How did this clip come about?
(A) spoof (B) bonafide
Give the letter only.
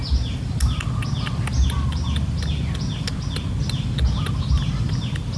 B